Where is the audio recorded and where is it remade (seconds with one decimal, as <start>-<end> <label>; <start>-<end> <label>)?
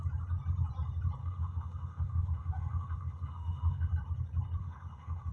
0.0-1.2 recorded; 1.2-3.9 remade; 3.9-4.6 recorded; 4.6-5.3 remade